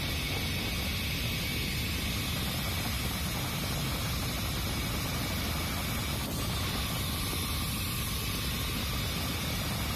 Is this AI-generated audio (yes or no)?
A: no